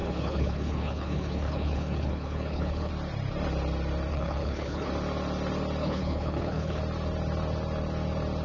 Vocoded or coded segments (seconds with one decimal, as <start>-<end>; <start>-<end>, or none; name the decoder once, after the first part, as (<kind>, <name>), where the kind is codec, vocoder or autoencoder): 0.0-2.9 (codec, HILCodec); 4.1-4.9; 5.8-6.8